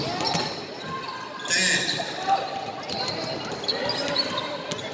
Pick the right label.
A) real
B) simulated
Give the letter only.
A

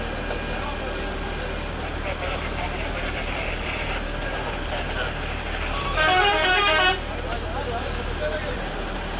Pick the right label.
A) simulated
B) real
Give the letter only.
B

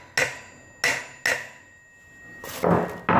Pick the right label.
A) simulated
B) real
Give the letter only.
B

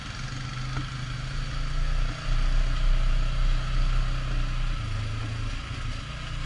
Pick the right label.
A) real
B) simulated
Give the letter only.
A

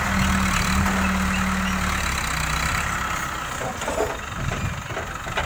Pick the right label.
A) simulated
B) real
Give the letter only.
B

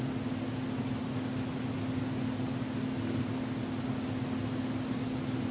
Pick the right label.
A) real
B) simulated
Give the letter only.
A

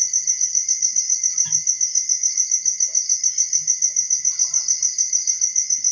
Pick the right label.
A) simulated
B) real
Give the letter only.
B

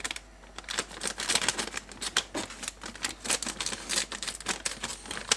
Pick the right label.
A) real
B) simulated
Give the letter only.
A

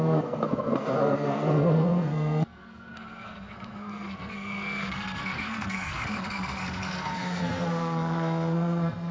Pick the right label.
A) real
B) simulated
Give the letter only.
B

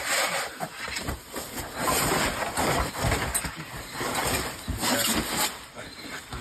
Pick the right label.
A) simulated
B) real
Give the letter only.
B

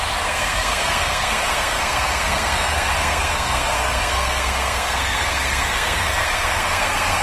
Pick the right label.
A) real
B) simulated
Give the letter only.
B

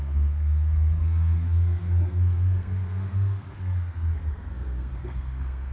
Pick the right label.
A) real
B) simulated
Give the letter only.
B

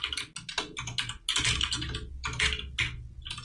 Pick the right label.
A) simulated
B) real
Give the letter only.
B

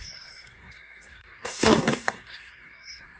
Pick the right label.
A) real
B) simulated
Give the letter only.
B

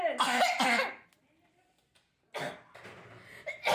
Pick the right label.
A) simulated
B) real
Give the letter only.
B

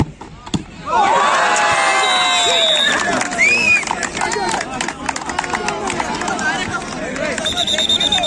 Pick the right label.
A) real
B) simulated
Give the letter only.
A